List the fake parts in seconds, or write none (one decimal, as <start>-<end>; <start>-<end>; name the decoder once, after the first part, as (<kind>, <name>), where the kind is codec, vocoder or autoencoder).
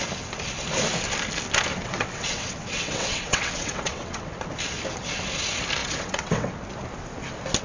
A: 1.7-4.3 (vocoder, WaveNeXt); 5.8-6.5